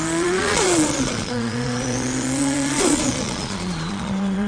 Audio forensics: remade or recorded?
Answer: remade